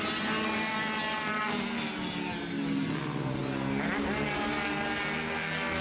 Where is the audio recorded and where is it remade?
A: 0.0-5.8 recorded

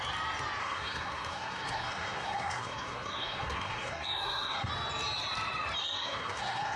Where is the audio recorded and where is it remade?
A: 0.0-0.6 recorded; 0.6-4.7 remade; 4.7-5.8 recorded; 5.8-6.8 remade

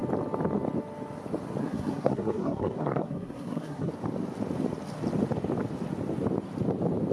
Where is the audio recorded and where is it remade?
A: 0.0-1.6 recorded; 1.6-3.9 remade; 3.9-7.1 recorded

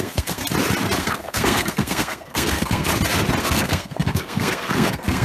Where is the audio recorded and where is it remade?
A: 0.0-0.4 remade; 0.4-1.0 recorded; 1.0-2.9 remade; 2.9-3.4 recorded; 3.4-5.2 remade